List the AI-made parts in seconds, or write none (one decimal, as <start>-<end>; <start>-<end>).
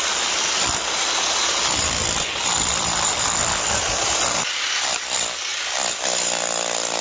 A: 0.0-7.0